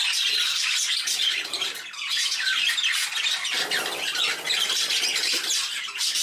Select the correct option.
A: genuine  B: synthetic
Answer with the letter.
A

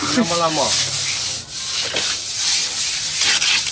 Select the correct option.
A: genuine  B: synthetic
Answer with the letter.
A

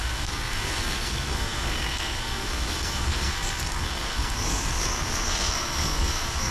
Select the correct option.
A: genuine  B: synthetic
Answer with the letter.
B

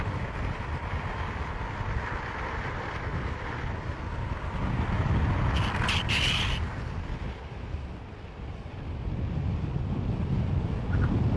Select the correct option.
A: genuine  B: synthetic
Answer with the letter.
A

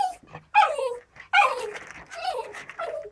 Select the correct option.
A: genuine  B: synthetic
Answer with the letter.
A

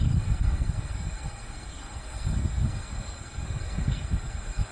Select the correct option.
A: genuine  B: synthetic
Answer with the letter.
B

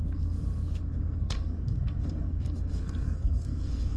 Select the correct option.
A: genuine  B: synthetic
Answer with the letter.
B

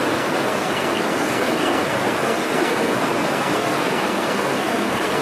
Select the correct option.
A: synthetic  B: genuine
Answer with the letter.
A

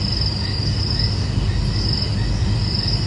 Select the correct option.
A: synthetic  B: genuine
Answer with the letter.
B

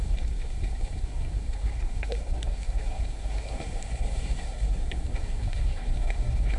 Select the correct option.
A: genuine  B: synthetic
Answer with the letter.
B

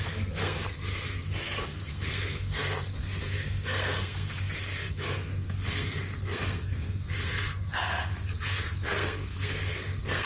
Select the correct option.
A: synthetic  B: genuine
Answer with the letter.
A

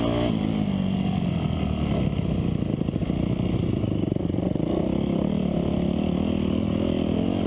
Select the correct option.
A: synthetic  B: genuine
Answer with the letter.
B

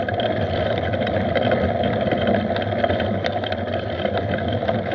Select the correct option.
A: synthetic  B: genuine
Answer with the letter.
B